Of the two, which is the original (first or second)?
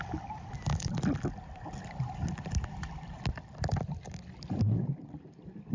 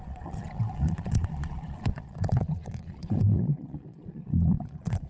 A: first